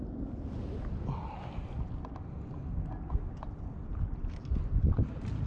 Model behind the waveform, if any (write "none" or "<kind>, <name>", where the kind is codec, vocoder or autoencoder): none